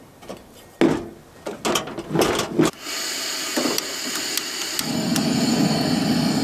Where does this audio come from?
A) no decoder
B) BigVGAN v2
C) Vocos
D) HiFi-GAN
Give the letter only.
A